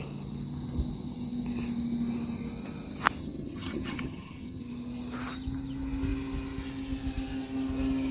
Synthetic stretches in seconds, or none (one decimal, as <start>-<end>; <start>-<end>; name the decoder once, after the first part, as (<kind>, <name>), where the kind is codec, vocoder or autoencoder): 3.2-4.6 (vocoder, HiFi-GAN)